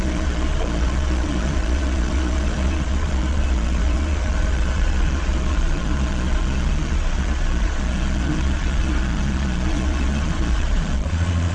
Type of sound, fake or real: fake